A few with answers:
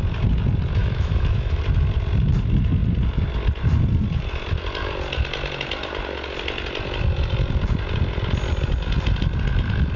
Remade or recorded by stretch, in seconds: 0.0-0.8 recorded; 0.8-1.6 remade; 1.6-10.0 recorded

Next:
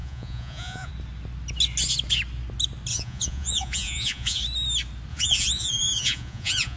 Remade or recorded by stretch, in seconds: 0.0-0.9 remade; 0.9-2.9 recorded; 2.9-4.4 remade; 4.4-5.1 recorded; 5.1-6.8 remade

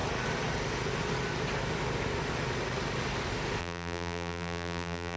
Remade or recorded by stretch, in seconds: 0.0-3.6 recorded; 3.6-5.2 remade

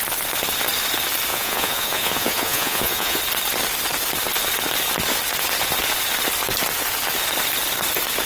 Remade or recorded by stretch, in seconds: 0.0-1.3 recorded; 1.3-3.2 remade; 3.2-8.3 recorded

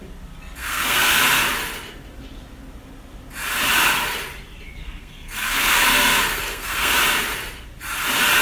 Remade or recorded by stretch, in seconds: 0.0-0.6 recorded; 0.6-1.2 remade; 1.2-4.8 recorded; 4.8-6.9 remade; 6.9-8.4 recorded

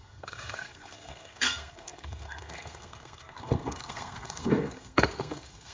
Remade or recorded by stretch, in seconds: 0.0-5.7 remade

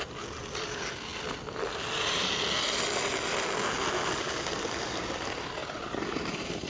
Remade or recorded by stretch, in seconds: 0.0-5.6 recorded; 5.6-6.7 remade

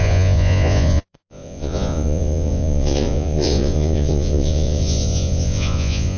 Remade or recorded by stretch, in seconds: 0.0-6.2 remade